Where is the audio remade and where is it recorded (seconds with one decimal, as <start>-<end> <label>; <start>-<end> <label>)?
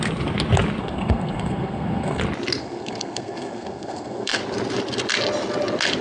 0.0-0.8 recorded; 0.8-2.2 remade; 2.2-2.6 recorded; 2.6-4.4 remade; 4.4-6.0 recorded